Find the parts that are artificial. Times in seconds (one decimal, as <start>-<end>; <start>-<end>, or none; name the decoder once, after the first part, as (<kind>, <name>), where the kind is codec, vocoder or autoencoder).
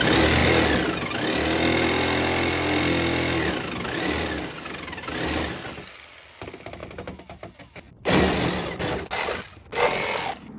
none